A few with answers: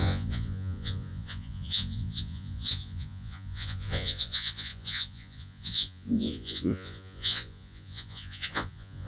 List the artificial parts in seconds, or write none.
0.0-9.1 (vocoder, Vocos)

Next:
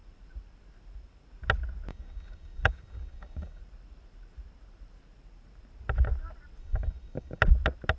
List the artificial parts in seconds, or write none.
1.9-3.6 (codec, DAC); 6.6-7.4

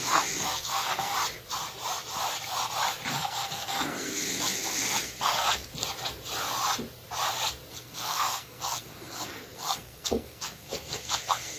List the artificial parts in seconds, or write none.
0.0-1.1 (codec, SNAC); 3.1-5.7; 7.7-11.6

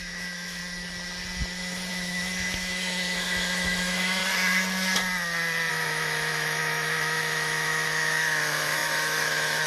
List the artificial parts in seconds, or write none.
0.0-0.6 (autoencoder, DAC-VAE); 1.9-4.2; 5.7-9.7

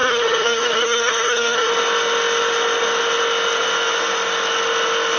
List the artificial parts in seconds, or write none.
0.0-1.7 (codec, SNAC)

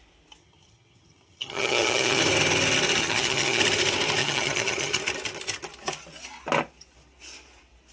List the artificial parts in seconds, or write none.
0.4-2.2 (vocoder, HiFi-GAN); 3.0-3.6; 4.2-5.0